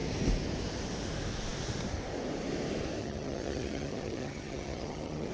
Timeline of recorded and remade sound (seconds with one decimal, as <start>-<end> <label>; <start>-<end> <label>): 0.0-3.0 recorded; 3.0-5.3 remade